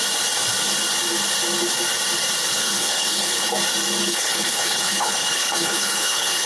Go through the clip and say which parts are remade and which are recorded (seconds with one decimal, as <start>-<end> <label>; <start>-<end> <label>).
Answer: 0.0-2.5 recorded; 2.5-3.5 remade; 3.5-4.1 recorded; 4.1-6.5 remade